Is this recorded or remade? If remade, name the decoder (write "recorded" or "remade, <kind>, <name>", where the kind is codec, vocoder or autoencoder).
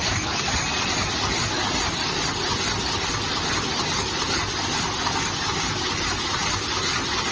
recorded